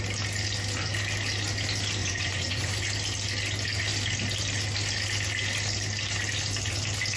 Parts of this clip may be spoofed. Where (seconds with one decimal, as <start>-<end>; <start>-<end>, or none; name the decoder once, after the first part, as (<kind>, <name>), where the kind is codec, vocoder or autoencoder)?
2.0-2.7 (vocoder, Vocos)